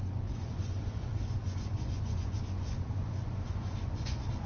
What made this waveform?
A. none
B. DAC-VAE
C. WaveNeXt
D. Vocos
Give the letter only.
D